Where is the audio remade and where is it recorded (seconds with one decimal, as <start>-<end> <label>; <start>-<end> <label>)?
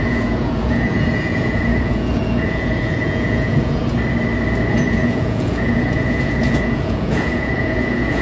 0.0-3.8 remade; 3.8-4.7 recorded; 4.7-8.2 remade